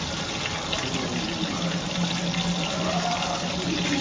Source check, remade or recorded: recorded